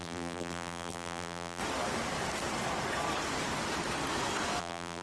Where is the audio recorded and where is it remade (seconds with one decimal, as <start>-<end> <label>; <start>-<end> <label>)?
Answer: 0.0-1.6 remade; 1.6-4.6 recorded; 4.6-5.0 remade